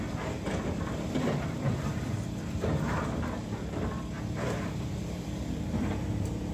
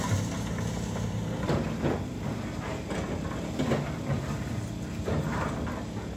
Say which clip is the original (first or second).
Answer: second